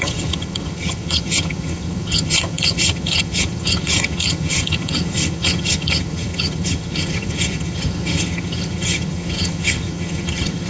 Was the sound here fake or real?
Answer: fake